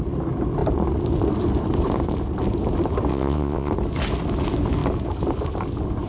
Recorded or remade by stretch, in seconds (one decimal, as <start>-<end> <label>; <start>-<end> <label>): 0.0-3.1 recorded; 3.1-3.7 remade; 3.7-6.1 recorded